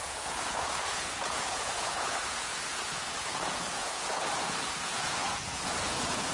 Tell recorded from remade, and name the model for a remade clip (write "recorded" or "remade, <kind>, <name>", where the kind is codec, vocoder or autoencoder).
remade, vocoder, Vocos